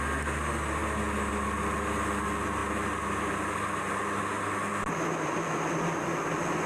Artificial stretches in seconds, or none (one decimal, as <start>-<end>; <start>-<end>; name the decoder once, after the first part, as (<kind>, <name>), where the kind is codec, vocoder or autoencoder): none